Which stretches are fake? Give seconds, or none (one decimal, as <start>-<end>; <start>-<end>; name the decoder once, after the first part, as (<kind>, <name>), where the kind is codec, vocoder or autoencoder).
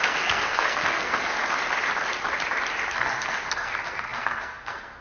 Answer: 0.0-1.3 (codec, SNAC); 2.9-5.0